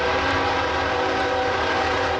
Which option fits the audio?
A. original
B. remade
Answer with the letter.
B